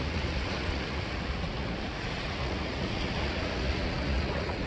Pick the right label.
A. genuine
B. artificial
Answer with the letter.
B